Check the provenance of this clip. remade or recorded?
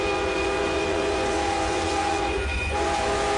remade